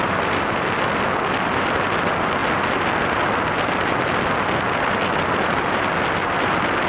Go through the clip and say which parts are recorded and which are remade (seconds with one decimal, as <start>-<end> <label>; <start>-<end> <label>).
0.0-6.9 recorded